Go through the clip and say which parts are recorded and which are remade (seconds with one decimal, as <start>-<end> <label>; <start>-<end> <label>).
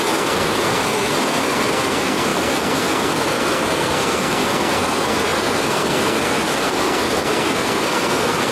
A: 0.0-8.5 remade